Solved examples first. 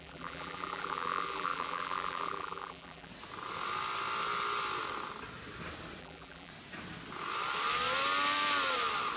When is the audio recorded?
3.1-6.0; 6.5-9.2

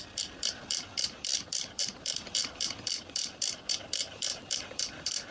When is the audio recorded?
none